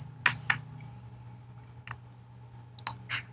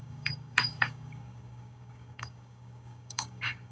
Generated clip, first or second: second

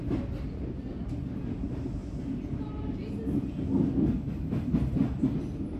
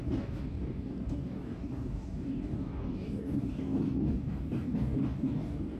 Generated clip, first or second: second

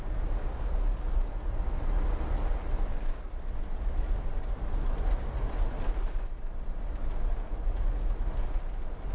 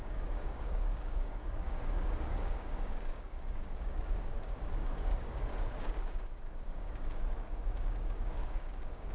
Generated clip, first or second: second